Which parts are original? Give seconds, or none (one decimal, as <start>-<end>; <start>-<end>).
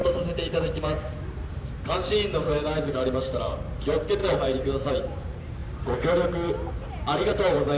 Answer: 5.6-6.1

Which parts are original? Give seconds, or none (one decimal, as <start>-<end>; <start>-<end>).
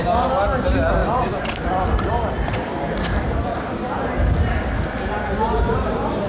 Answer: 0.0-1.0; 4.0-6.3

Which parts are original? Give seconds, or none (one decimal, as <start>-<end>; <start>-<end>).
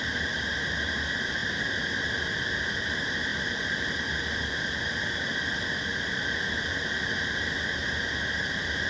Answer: 7.8-8.5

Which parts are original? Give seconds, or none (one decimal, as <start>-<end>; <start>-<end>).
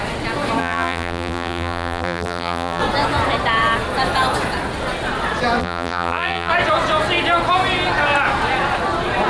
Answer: 0.0-0.6; 2.8-5.6; 6.5-9.3